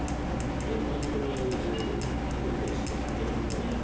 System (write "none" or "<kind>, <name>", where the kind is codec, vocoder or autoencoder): none